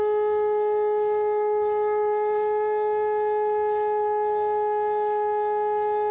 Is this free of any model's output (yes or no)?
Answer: yes